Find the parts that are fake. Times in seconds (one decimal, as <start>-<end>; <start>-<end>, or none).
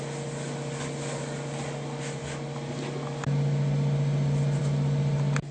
none